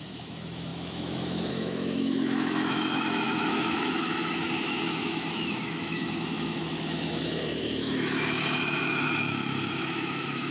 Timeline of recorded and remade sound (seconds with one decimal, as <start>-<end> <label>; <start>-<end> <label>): 0.0-10.5 remade